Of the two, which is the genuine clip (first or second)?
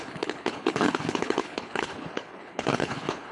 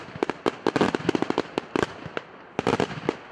second